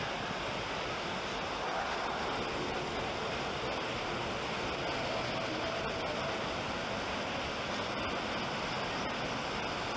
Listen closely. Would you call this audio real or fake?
real